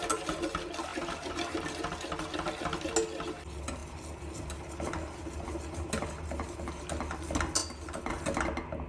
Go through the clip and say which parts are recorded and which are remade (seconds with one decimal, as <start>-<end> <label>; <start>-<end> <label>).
0.0-8.9 recorded